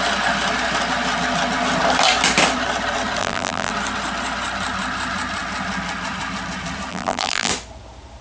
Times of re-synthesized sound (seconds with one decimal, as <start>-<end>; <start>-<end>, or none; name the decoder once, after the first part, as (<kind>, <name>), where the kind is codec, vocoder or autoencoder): 3.2-3.7 (vocoder, BigVGAN v2); 6.9-7.5